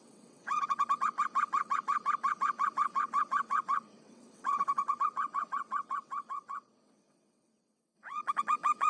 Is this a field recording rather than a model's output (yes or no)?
no